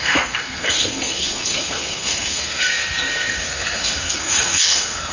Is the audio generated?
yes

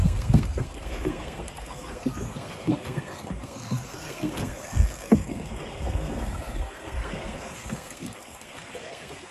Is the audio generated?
yes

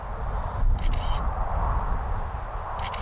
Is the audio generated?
no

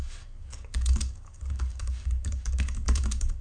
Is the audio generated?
yes